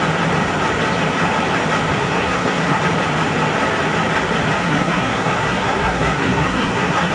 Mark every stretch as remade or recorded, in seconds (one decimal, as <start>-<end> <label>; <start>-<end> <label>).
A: 0.0-2.0 recorded; 2.0-2.8 remade; 2.8-4.6 recorded; 4.6-7.1 remade